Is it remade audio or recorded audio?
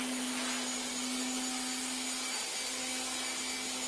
recorded